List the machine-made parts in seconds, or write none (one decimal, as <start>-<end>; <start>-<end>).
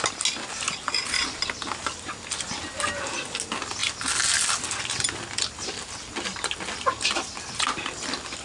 none